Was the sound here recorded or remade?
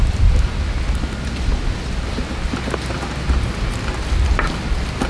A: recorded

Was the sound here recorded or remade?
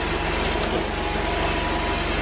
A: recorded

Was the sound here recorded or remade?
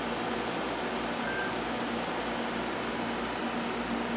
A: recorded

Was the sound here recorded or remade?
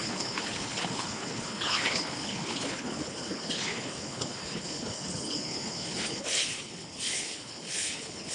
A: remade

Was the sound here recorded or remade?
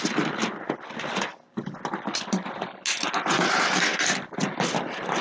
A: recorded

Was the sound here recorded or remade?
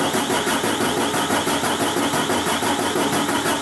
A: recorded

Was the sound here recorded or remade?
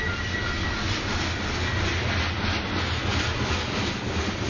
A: recorded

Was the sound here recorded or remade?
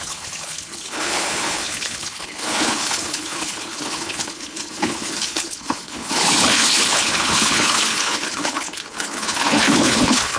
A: remade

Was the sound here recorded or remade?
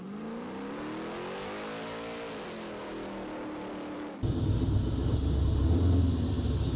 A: recorded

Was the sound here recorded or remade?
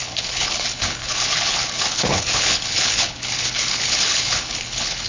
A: remade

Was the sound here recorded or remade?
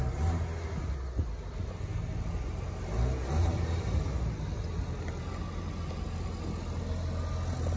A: recorded